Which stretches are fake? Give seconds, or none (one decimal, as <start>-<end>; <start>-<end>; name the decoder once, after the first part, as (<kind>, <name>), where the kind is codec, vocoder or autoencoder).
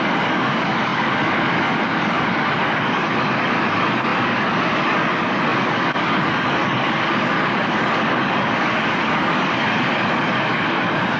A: 0.0-11.2 (codec, DAC)